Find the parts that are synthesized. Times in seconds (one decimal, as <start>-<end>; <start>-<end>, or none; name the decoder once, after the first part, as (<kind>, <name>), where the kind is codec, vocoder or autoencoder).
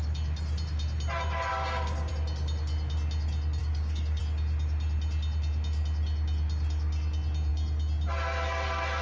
1.5-2.1 (codec, DAC); 3.6-4.2